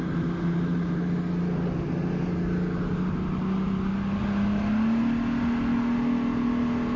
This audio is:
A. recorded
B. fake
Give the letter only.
A